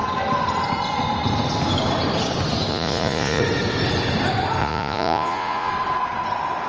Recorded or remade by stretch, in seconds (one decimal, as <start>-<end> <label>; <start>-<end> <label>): 0.0-2.7 recorded; 2.7-3.4 remade; 3.4-4.6 recorded; 4.6-5.7 remade; 5.7-6.7 recorded